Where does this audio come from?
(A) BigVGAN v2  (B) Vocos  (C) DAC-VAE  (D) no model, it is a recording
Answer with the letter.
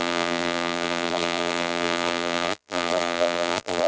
A